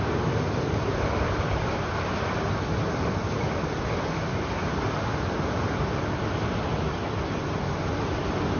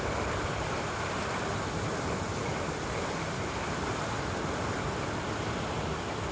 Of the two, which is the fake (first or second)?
second